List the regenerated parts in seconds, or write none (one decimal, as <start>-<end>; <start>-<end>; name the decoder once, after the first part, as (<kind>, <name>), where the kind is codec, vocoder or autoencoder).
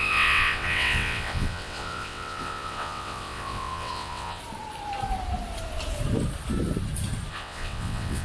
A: 0.0-4.4 (vocoder, WaveNeXt); 7.3-8.2